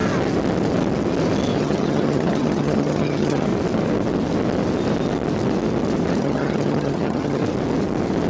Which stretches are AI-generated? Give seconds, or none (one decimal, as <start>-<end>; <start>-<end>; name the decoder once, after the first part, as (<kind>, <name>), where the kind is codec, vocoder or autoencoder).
1.6-3.5 (vocoder, HiFi-GAN); 6.2-7.4

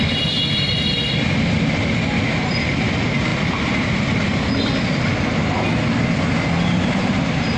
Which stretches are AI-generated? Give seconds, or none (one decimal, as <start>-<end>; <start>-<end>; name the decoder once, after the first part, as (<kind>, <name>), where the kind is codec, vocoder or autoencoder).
none

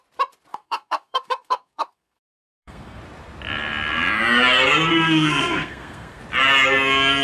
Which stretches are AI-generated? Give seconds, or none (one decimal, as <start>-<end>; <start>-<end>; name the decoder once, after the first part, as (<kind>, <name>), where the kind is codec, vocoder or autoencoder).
0.5-3.0 (codec, SNAC); 4.9-6.2